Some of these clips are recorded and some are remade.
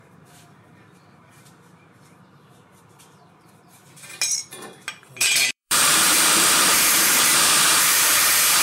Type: remade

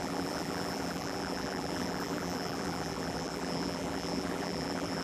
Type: remade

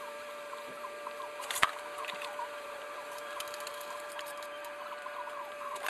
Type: remade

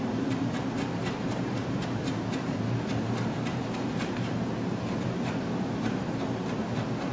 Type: remade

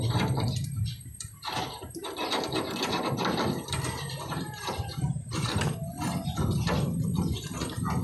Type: remade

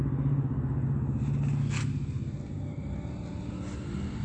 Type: recorded